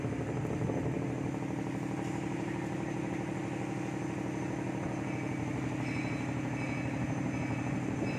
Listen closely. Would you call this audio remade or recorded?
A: recorded